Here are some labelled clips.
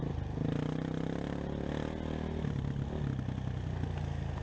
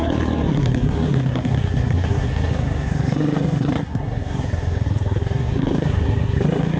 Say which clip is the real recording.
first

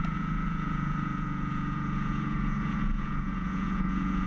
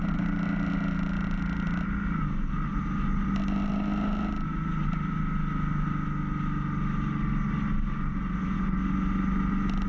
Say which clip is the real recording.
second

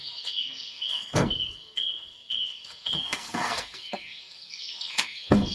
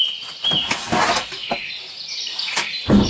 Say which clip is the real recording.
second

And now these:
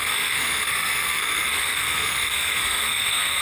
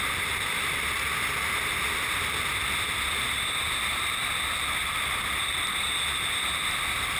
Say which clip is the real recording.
second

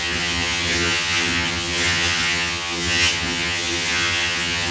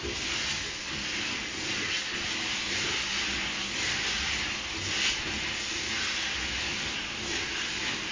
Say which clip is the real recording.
second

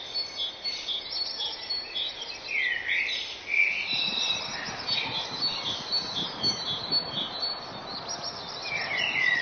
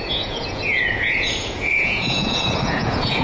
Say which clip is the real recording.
first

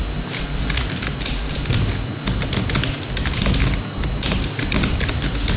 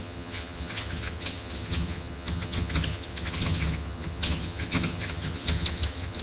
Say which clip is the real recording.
first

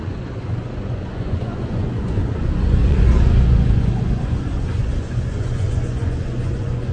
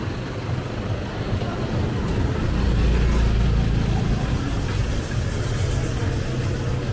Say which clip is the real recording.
second